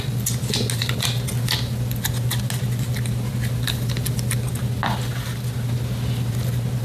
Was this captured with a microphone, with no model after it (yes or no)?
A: yes